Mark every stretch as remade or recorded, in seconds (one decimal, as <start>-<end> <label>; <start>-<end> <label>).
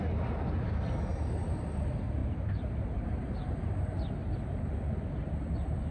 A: 0.0-2.2 recorded; 2.2-3.6 remade; 3.6-5.9 recorded